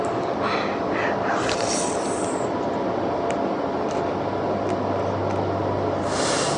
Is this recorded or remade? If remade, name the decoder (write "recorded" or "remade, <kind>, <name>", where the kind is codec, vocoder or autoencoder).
recorded